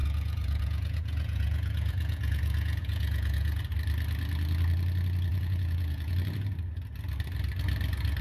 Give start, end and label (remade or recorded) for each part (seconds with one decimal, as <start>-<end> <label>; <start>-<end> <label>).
0.0-3.6 remade; 3.6-5.3 recorded; 5.3-6.1 remade; 6.1-8.2 recorded